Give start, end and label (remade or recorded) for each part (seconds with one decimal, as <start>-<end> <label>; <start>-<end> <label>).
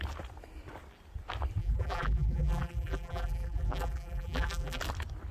0.0-1.6 recorded; 1.6-4.8 remade; 4.8-5.3 recorded